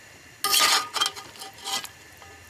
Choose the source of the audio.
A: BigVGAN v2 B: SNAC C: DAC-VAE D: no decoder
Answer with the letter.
D